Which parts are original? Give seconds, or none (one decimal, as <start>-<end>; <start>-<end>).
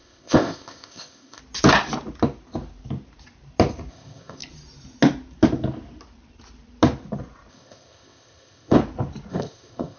1.4-3.9; 4.4-7.5; 8.8-9.3